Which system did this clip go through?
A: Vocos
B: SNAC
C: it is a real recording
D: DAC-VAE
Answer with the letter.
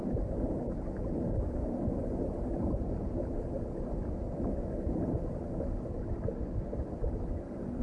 C